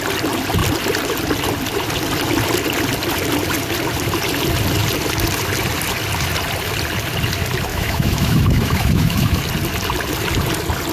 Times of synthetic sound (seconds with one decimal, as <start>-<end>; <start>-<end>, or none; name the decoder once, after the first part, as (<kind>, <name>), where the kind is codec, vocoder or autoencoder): 7.7-9.4 (autoencoder, DAC-VAE)